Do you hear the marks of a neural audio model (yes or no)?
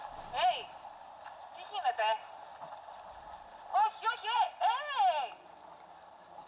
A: no